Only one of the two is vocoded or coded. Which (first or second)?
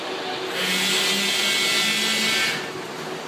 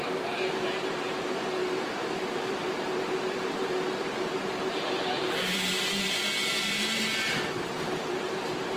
second